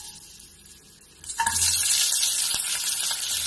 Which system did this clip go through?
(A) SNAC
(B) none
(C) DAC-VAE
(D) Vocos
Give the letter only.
B